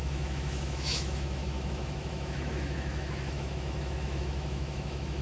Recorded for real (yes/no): no